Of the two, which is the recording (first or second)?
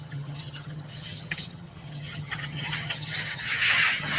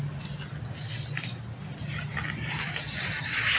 second